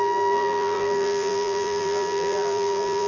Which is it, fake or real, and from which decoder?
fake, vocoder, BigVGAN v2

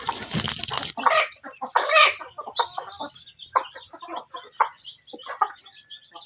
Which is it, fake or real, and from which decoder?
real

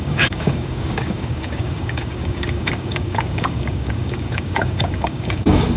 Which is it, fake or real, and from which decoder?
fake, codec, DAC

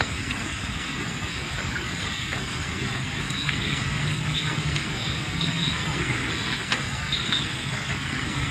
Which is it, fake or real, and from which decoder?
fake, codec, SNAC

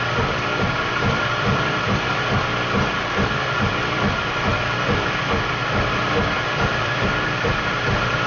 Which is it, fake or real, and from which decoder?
fake, vocoder, BigVGAN v2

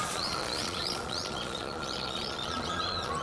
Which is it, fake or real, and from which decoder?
fake, vocoder, Vocos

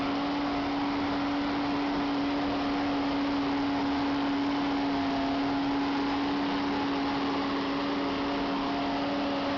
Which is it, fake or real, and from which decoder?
real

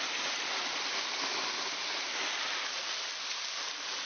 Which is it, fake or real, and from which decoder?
real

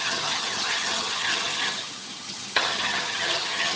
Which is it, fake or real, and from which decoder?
fake, vocoder, HiFi-GAN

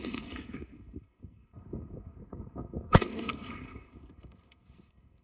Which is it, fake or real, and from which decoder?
fake, codec, SNAC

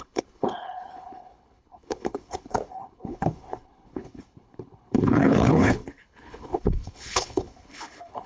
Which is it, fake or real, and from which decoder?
fake, codec, HILCodec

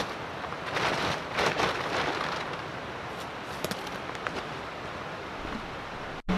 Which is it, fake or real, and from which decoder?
real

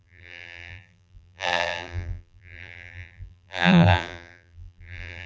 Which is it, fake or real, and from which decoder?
fake, vocoder, BigVGAN v2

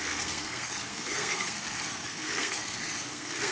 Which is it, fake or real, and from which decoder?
fake, codec, SNAC